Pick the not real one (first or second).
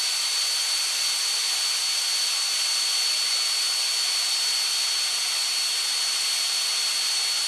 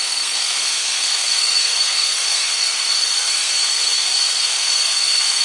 second